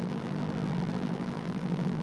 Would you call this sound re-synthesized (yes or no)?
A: yes